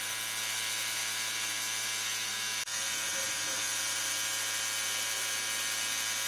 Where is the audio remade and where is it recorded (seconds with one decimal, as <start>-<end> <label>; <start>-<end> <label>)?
0.0-2.7 recorded; 2.7-4.1 remade; 4.1-6.3 recorded